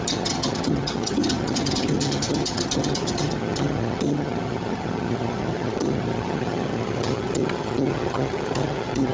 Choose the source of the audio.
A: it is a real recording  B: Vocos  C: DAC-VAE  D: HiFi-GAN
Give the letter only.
D